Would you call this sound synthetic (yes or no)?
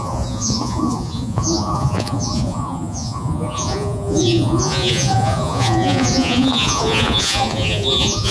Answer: yes